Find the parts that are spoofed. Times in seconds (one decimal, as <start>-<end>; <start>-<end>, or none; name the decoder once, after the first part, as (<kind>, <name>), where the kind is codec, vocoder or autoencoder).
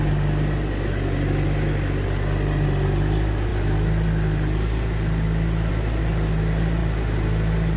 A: none